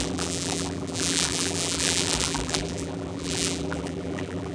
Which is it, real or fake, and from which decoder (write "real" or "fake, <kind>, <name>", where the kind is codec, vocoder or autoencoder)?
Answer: fake, vocoder, BigVGAN v2